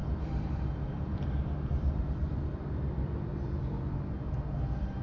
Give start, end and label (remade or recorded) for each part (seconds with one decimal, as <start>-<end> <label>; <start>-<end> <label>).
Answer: 0.0-3.3 remade; 3.3-5.0 recorded

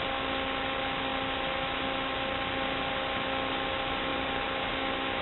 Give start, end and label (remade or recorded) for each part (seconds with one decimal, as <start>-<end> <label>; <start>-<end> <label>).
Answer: 0.0-4.1 recorded; 4.1-4.7 remade; 4.7-5.2 recorded